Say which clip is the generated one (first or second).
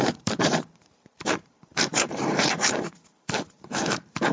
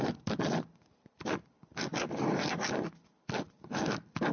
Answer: first